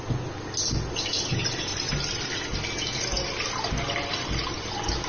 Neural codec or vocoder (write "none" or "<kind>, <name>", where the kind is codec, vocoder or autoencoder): none